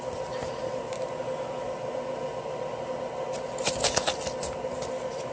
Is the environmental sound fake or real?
real